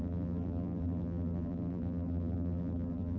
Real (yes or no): no